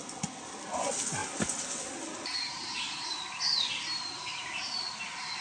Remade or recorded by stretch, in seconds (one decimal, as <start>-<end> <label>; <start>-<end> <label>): 0.0-5.4 recorded